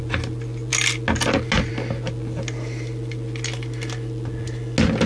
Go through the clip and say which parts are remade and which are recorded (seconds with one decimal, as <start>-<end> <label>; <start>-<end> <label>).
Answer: 0.0-5.1 recorded

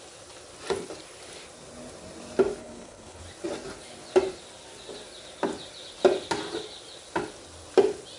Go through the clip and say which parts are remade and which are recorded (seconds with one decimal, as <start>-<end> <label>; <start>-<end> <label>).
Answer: 0.0-2.6 recorded; 2.6-3.2 remade; 3.2-8.2 recorded

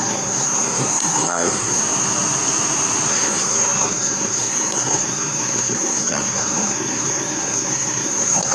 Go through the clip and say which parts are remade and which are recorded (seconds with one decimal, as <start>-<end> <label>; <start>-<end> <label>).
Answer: 0.0-1.8 remade; 1.8-3.1 recorded; 3.1-8.5 remade

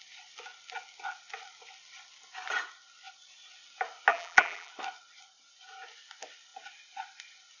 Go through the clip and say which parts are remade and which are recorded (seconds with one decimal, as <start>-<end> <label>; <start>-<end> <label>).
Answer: 0.0-4.1 recorded; 4.1-4.7 remade; 4.7-7.6 recorded